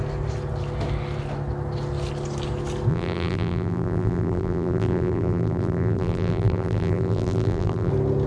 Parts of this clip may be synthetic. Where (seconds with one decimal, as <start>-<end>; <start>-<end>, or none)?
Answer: 2.9-7.9